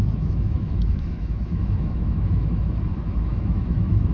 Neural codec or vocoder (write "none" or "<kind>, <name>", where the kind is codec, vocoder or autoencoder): autoencoder, DAC-VAE